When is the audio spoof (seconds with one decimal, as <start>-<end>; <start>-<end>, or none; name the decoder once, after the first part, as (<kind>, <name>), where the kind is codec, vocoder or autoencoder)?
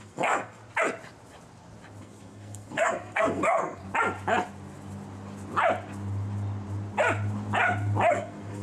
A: 0.0-0.6 (codec, SNAC); 2.0-3.8; 8.1-8.6